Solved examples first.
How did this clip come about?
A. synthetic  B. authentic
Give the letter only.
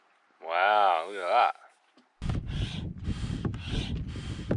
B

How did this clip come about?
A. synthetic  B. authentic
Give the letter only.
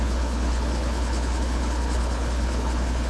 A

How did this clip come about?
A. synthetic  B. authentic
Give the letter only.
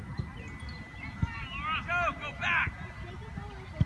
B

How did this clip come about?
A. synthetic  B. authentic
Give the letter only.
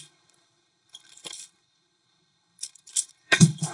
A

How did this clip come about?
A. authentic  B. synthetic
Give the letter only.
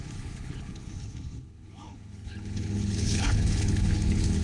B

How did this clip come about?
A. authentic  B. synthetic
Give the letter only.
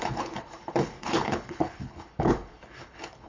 B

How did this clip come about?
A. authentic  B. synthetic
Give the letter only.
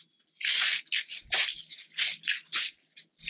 A